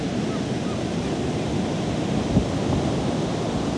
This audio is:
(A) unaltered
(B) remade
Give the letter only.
A